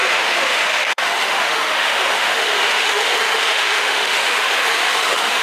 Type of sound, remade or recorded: remade